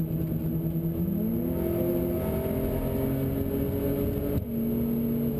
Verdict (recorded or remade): recorded